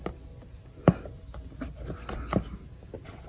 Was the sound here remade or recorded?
recorded